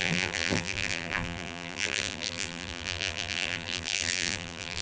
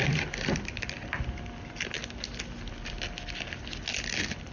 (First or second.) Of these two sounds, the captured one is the second